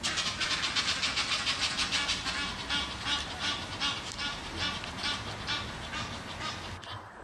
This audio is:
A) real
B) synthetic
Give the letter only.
A